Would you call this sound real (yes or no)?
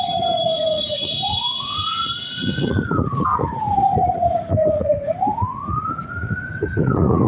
no